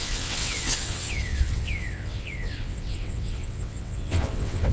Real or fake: fake